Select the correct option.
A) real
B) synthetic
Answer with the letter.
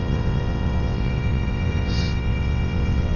B